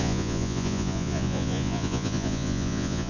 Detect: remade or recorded remade